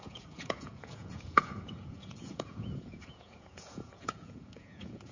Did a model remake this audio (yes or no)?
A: yes